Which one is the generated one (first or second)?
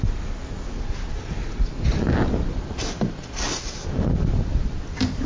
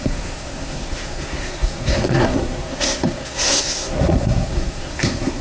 second